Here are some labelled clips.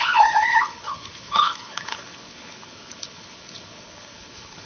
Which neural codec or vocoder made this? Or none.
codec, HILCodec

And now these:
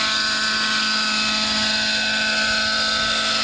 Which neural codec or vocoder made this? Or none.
none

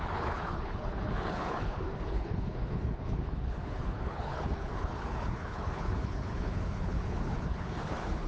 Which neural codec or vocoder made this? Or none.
codec, HILCodec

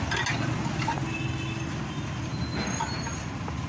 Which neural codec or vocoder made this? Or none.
none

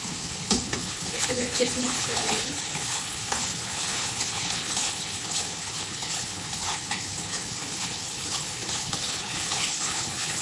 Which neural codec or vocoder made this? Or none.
codec, HILCodec